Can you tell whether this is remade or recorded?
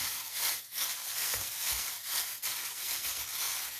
remade